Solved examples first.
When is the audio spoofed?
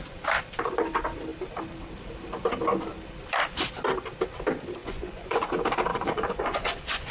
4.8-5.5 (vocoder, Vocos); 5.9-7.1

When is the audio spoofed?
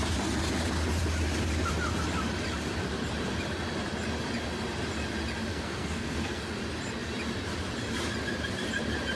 5.5-6.4 (codec, SNAC)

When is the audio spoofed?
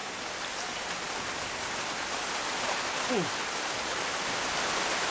none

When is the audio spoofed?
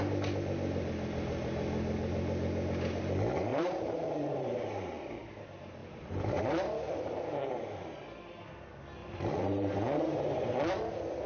3.5-5.3 (vocoder, BigVGAN v2); 5.8-7.9; 9.0-10.5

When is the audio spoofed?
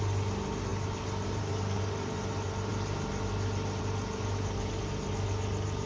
none